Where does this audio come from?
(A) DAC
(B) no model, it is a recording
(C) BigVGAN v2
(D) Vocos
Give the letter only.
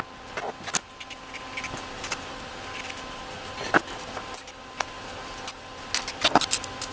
B